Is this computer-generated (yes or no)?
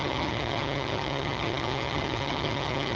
yes